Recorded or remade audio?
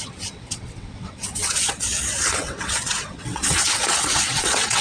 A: remade